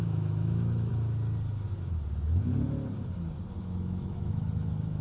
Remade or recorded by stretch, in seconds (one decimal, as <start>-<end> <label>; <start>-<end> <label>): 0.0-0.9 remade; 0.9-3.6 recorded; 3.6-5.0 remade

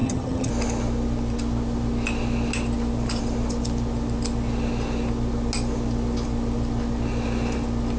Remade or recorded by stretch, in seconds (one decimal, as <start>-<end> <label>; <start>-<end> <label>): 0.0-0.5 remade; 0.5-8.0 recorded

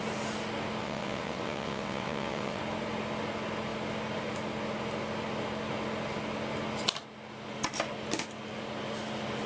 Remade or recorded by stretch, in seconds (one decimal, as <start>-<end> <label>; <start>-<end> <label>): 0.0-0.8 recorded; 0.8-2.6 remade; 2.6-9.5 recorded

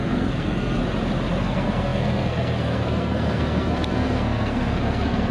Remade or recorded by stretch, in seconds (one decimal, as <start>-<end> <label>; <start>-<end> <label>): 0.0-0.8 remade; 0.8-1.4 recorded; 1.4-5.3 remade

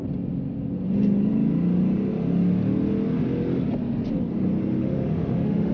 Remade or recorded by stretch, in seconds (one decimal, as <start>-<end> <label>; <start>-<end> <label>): 0.0-4.8 recorded; 4.8-5.7 remade

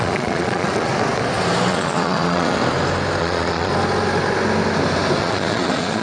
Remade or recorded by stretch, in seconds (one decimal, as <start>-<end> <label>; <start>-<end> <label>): 0.0-0.9 remade; 0.9-1.7 recorded; 1.7-2.6 remade; 2.6-3.2 recorded; 3.2-3.7 remade; 3.7-5.2 recorded; 5.2-6.0 remade

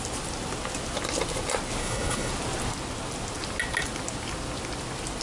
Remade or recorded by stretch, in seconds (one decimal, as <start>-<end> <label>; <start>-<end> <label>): 0.0-1.8 recorded; 1.8-2.3 remade; 2.3-5.2 recorded